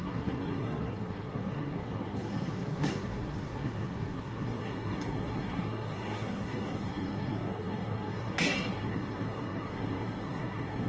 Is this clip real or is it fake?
fake